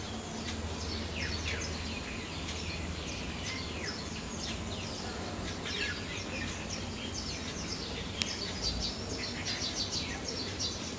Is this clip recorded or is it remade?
recorded